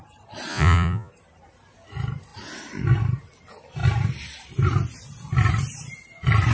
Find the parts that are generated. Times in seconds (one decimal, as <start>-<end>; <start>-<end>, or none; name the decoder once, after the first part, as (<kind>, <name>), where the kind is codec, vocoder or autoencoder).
0.5-1.1 (vocoder, Vocos)